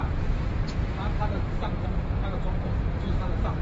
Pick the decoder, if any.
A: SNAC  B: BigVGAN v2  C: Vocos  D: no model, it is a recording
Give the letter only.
B